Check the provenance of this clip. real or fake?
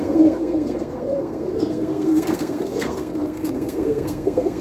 fake